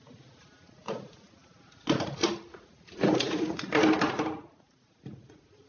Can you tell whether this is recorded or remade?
recorded